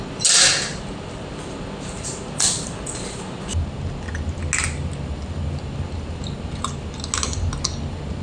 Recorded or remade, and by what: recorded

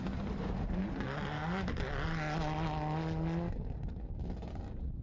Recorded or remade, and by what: recorded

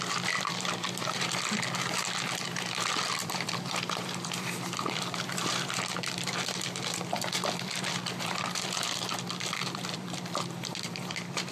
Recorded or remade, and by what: remade, vocoder, BigVGAN v2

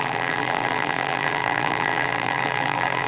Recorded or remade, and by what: remade, vocoder, BigVGAN v2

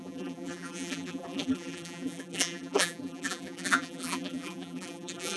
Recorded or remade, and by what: remade, vocoder, BigVGAN v2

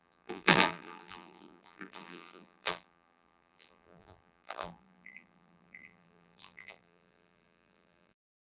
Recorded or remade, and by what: remade, vocoder, BigVGAN v2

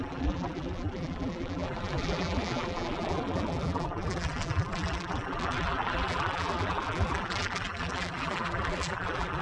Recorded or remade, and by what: remade, vocoder, BigVGAN v2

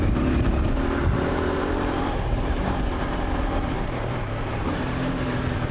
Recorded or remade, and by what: remade, vocoder, BigVGAN v2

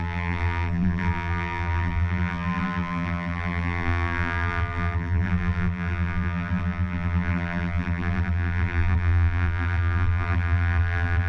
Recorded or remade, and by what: remade, vocoder, BigVGAN v2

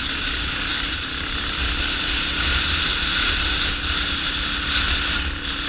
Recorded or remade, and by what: recorded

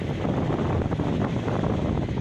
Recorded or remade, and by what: recorded